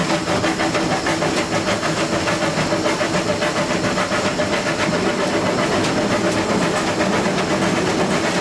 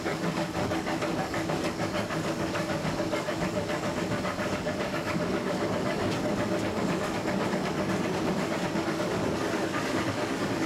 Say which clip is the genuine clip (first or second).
first